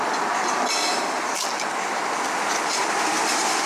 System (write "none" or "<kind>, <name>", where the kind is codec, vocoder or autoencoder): none